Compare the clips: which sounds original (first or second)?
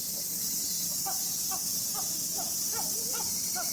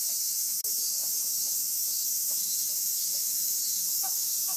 first